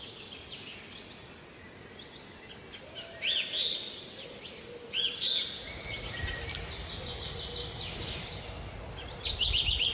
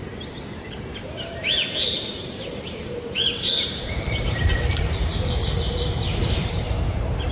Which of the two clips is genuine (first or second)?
first